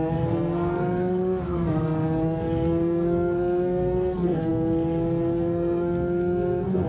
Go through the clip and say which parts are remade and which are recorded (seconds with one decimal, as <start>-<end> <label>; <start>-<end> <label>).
0.0-6.9 remade